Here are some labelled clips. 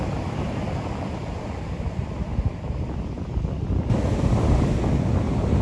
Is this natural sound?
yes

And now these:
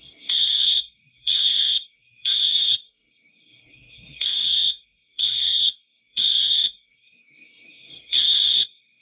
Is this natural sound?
no